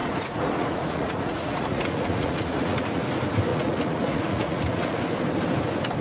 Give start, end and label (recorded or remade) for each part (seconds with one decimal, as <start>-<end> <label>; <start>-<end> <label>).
0.0-3.0 remade; 3.0-3.5 recorded; 3.5-5.0 remade; 5.0-6.0 recorded